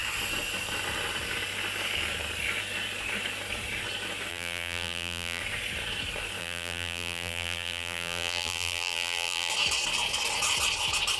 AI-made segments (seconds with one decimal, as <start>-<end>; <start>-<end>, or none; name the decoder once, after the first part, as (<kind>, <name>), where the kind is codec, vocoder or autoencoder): 4.3-5.4 (vocoder, BigVGAN v2); 6.4-9.5